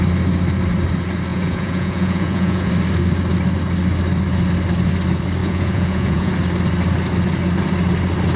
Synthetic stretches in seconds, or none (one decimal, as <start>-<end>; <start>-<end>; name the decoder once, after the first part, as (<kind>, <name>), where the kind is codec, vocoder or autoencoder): 1.3-2.7 (vocoder, Vocos); 5.4-6.3

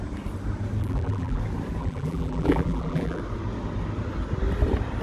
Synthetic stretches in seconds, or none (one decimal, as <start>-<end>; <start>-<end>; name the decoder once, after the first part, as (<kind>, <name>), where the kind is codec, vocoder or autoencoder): 0.8-1.4 (vocoder, BigVGAN v2); 1.8-3.2